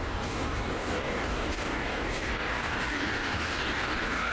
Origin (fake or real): fake